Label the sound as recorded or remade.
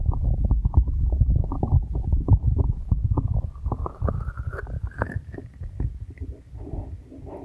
recorded